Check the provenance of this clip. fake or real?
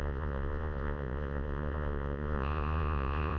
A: fake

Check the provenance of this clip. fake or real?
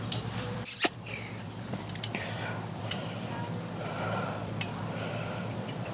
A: fake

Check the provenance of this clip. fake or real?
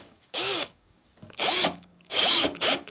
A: fake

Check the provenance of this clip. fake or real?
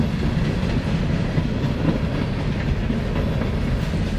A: real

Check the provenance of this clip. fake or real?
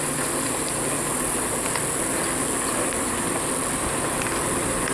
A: real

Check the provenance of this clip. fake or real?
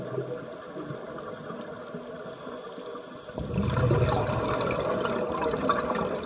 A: real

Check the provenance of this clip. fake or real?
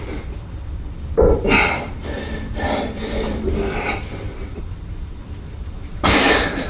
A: fake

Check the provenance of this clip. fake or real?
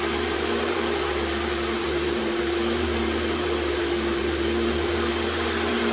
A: fake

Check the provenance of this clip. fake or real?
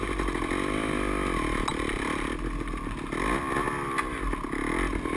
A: real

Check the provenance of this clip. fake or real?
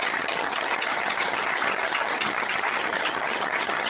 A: fake